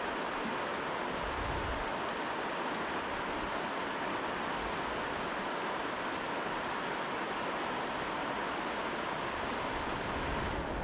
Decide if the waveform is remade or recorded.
recorded